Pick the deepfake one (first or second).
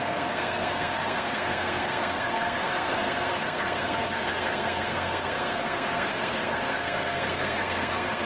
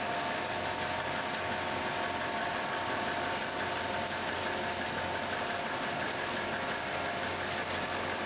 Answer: first